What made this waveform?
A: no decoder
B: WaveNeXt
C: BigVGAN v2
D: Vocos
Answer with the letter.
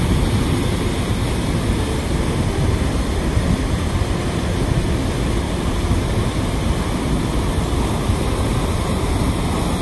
A